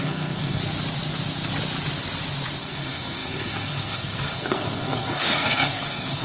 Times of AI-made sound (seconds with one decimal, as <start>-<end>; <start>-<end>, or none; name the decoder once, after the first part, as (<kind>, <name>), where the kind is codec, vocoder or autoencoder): 0.0-0.6 (codec, SNAC); 2.6-6.2